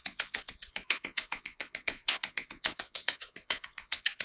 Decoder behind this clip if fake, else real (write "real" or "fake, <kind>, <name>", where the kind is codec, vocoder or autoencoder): fake, vocoder, Vocos